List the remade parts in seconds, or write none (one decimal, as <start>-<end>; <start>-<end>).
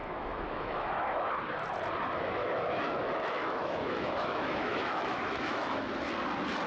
0.0-1.3; 2.4-5.9